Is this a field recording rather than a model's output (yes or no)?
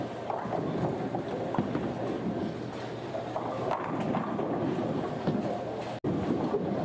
yes